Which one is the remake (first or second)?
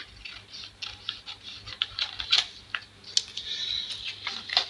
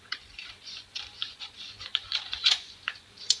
second